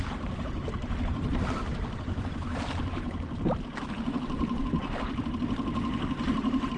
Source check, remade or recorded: recorded